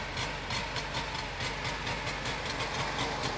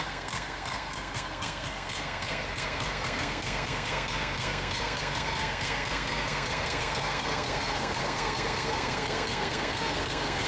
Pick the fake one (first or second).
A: second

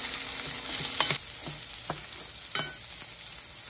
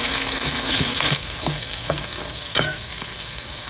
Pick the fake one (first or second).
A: second